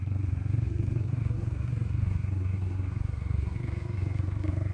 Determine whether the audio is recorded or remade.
remade